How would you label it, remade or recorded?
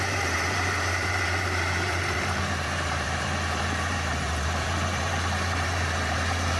remade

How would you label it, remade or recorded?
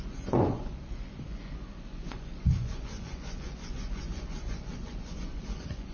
remade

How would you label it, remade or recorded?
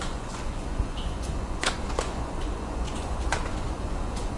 remade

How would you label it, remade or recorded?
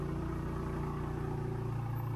recorded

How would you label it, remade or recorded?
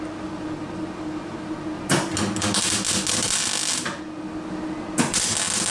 recorded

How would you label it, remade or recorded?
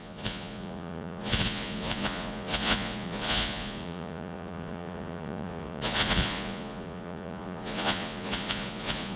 remade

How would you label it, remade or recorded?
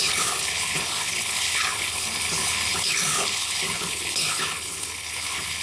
remade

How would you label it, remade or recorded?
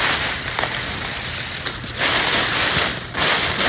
recorded